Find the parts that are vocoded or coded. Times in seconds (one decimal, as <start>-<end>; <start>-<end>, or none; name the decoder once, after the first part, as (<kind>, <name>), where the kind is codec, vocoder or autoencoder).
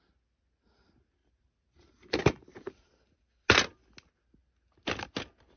1.2-3.3 (vocoder, BigVGAN v2)